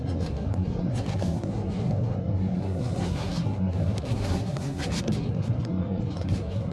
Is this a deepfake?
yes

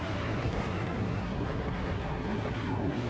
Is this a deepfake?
yes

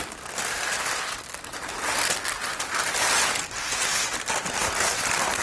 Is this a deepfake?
no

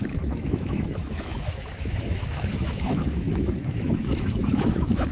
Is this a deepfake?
yes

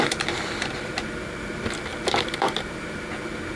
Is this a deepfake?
yes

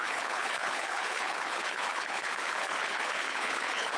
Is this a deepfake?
yes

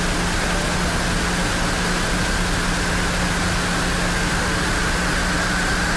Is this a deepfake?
no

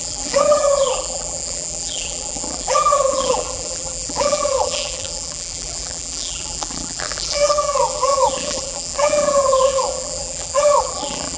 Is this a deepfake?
yes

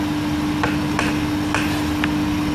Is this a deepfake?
no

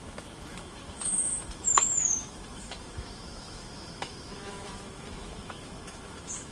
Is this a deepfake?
yes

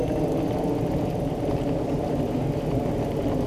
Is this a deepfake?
no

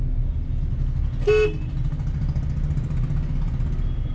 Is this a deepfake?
no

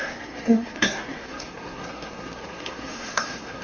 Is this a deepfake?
yes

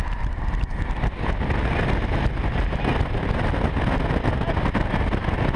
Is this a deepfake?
no